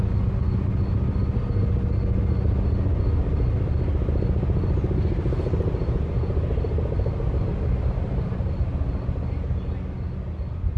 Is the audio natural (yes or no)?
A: yes